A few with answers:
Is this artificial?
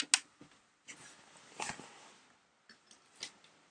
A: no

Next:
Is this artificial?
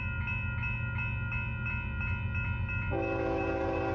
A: no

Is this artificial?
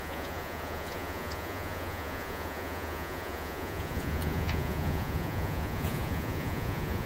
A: yes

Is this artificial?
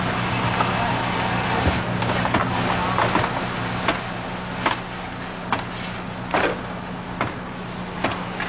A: no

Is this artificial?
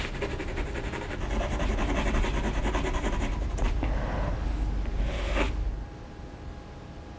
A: no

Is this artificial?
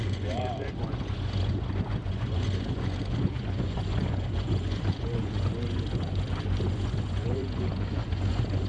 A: yes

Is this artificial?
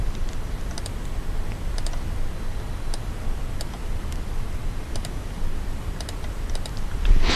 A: no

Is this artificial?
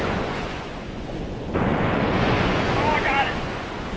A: yes